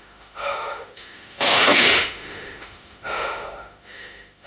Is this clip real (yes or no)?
no